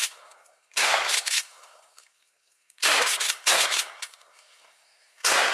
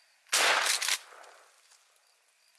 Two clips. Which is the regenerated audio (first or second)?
first